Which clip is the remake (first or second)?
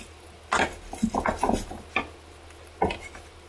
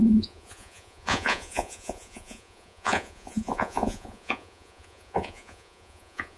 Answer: second